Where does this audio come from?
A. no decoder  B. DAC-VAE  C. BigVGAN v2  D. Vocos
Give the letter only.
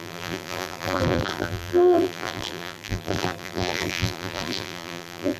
C